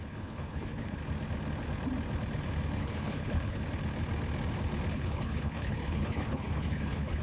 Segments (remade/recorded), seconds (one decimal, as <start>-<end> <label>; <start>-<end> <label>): 0.0-1.0 remade; 1.0-2.8 recorded; 2.8-3.6 remade; 3.6-4.9 recorded; 4.9-7.2 remade